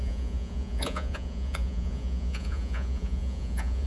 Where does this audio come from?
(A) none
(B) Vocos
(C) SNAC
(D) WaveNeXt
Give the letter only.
B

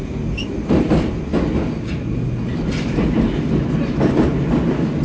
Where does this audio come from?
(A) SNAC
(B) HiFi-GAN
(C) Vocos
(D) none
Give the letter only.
D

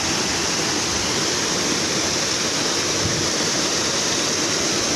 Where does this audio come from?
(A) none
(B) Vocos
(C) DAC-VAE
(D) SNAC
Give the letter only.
A